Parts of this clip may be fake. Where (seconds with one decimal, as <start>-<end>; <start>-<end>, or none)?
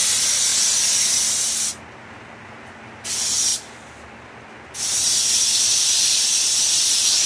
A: none